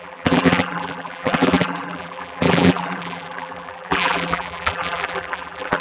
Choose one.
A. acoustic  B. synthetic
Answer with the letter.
B